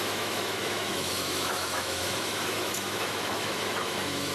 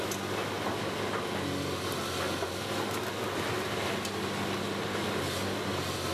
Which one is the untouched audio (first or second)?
second